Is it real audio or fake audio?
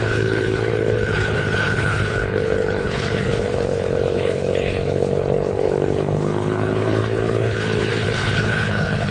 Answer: fake